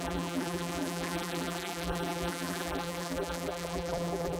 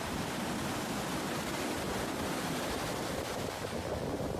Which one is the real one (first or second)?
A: second